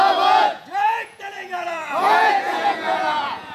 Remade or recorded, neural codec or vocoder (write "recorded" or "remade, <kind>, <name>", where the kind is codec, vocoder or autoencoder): remade, vocoder, Vocos